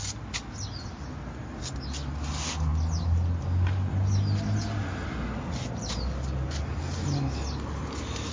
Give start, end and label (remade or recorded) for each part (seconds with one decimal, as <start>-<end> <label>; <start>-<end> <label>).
0.0-8.3 recorded